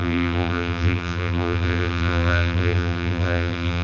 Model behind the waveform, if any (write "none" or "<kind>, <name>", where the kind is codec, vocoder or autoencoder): vocoder, BigVGAN v2